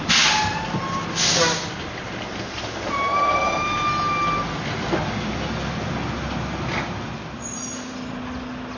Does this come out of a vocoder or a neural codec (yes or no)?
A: no